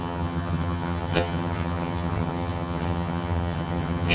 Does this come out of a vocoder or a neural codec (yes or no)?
yes